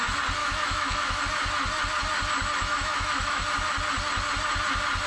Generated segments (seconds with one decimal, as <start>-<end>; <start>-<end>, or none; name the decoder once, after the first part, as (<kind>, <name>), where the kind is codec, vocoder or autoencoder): 0.4-1.2 (autoencoder, DAC-VAE); 2.6-3.4